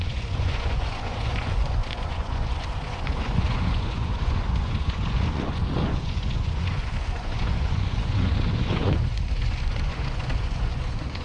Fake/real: fake